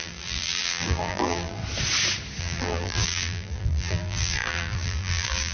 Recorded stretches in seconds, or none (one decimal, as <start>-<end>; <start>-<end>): 1.6-2.4